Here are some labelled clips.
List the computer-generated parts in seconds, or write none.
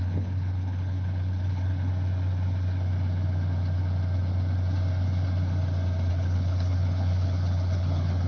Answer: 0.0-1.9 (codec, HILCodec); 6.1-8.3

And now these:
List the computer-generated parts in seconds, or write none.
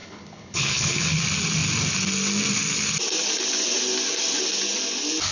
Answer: 0.0-1.2 (codec, HILCodec)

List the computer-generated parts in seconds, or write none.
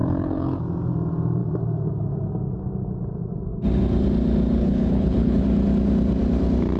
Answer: 0.0-0.6 (codec, HILCodec); 4.6-5.4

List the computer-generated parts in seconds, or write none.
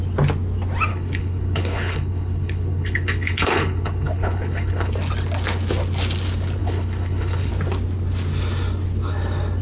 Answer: 0.9-4.9 (codec, HILCodec); 6.6-7.5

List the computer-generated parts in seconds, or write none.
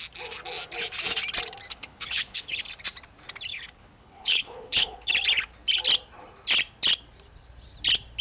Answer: 1.7-2.6 (codec, HILCodec); 3.5-5.1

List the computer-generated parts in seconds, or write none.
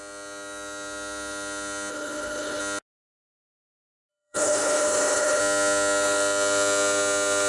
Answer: 1.9-2.6 (codec, HILCodec); 4.1-5.4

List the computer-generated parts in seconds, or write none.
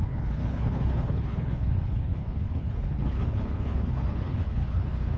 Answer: 0.0-5.2 (codec, HILCodec)